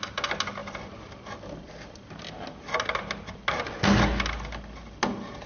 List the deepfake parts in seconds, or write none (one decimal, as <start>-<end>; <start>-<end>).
none